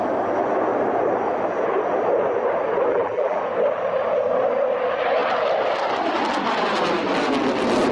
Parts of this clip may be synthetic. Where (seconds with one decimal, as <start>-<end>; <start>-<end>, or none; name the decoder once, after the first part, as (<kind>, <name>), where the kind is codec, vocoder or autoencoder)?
2.9-3.4 (vocoder, BigVGAN v2)